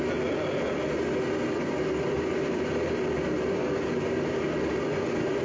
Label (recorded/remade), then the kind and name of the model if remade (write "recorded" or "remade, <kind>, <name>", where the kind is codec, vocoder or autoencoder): recorded